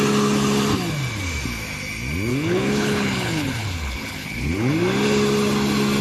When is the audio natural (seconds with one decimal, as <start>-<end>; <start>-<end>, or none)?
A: 0.0-2.3; 4.7-6.0